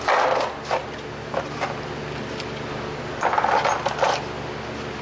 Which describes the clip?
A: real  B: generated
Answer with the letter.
A